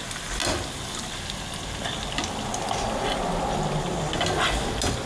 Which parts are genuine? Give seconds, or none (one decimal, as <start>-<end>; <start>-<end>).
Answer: 0.0-5.1